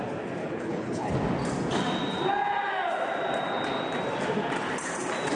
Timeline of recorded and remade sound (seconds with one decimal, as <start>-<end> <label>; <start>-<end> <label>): 0.0-0.4 recorded; 0.4-1.1 remade; 1.1-5.4 recorded

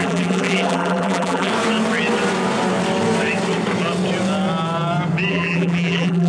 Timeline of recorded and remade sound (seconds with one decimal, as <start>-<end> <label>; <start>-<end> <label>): 0.0-1.5 remade; 1.5-5.3 recorded; 5.3-6.3 remade

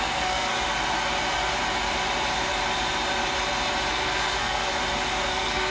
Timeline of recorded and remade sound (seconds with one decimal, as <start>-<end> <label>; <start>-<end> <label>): 0.0-0.5 remade; 0.5-3.9 recorded; 3.9-4.7 remade; 4.7-5.3 recorded; 5.3-5.7 remade

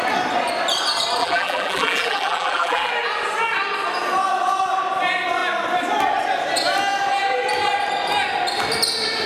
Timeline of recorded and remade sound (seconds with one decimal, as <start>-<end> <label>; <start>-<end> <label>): 0.0-1.2 recorded; 1.2-2.9 remade; 2.9-9.3 recorded

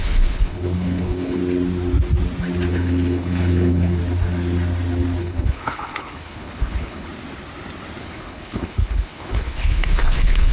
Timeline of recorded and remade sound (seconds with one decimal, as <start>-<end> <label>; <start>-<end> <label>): 0.0-1.4 remade; 1.4-2.7 recorded; 2.7-4.0 remade; 4.0-5.2 recorded; 5.2-7.1 remade; 7.1-8.0 recorded; 8.0-10.5 remade

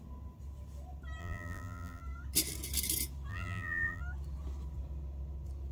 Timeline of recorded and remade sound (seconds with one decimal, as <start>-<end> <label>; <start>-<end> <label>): 0.0-1.2 recorded; 1.2-2.0 remade; 2.0-3.3 recorded; 3.3-4.0 remade; 4.0-5.7 recorded